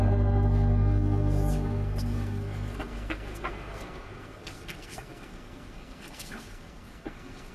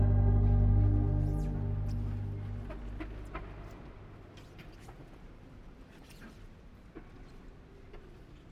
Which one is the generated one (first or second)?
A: first